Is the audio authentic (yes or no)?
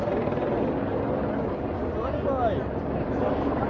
yes